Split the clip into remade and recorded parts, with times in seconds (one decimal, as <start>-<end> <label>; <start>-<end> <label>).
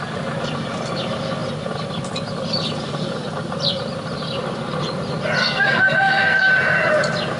0.0-5.4 recorded; 5.4-6.5 remade; 6.5-7.4 recorded